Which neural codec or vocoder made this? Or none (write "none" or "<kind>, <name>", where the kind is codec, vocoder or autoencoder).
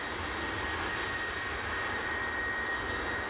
none